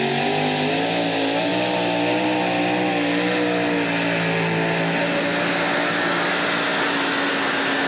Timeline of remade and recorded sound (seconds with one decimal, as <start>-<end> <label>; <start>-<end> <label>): 0.0-7.9 recorded